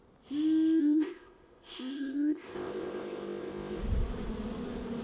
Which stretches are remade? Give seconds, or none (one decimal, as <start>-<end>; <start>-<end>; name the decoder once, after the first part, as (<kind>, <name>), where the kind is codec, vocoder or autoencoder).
0.8-3.8 (codec, ZipCodec)